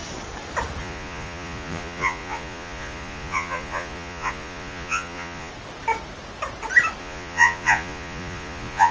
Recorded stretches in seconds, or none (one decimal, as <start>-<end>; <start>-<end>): 0.0-0.8; 5.5-7.0